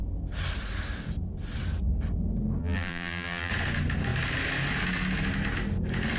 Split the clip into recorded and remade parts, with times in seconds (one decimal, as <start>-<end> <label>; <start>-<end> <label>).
0.0-2.6 recorded; 2.6-3.5 remade; 3.5-6.2 recorded

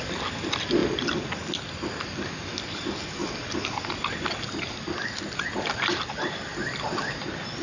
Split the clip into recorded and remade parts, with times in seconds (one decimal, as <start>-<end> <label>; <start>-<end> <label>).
0.0-7.6 recorded

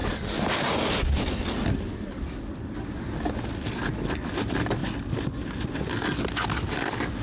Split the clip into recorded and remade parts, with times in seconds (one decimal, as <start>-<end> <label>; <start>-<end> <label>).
0.0-7.2 recorded

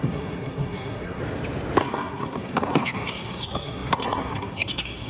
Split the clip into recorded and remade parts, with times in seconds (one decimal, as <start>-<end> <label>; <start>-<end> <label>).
0.0-1.2 remade; 1.2-1.8 recorded; 1.8-5.1 remade

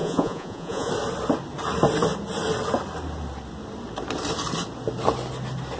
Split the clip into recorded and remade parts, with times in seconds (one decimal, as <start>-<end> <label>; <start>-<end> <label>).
0.0-0.9 remade; 0.9-5.8 recorded

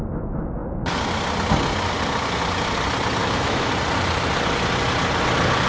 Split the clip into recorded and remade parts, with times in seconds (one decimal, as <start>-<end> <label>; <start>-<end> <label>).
0.0-3.2 recorded; 3.2-3.7 remade; 3.7-5.7 recorded